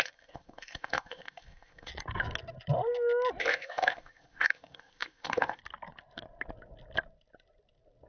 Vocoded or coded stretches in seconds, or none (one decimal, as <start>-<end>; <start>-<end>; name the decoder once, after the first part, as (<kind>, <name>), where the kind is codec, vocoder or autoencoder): 0.0-1.9 (codec, ZipCodec); 3.4-5.6